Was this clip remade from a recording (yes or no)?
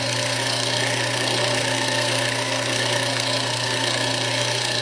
yes